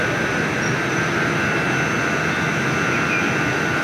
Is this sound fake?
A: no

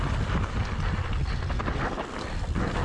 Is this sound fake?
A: no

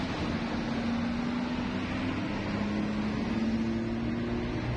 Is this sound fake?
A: no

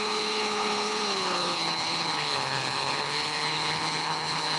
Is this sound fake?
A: yes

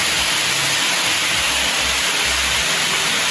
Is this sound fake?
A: no